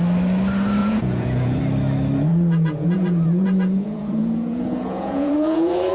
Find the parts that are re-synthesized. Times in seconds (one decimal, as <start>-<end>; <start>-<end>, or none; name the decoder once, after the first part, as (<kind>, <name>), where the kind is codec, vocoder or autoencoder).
0.8-1.6 (vocoder, Vocos); 2.3-5.9